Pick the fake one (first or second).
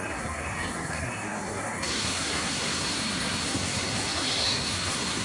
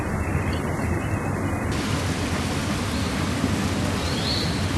first